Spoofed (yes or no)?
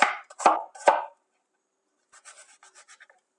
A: yes